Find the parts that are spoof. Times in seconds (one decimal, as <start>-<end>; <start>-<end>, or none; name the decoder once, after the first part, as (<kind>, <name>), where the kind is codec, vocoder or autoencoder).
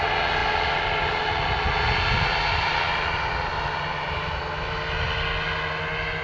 none